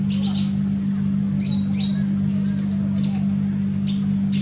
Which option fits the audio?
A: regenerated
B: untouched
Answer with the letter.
B